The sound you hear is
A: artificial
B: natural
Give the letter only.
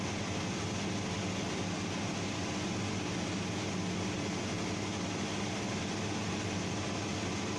B